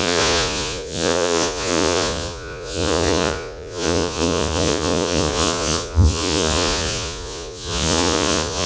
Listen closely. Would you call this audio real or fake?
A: fake